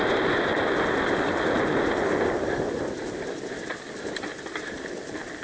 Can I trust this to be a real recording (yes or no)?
yes